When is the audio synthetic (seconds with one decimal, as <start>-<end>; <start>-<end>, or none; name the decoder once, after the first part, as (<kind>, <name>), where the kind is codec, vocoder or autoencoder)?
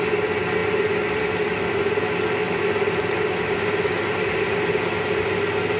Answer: none